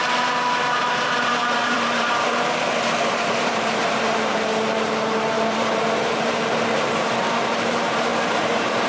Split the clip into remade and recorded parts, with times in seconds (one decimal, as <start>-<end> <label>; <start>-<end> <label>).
0.0-0.9 recorded; 0.9-8.9 remade